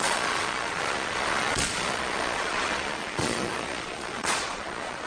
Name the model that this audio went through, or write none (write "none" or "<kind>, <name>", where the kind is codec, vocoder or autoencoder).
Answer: vocoder, Vocos